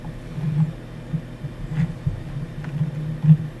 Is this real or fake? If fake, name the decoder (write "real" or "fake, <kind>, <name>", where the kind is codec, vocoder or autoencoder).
real